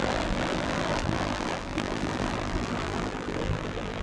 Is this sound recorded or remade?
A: remade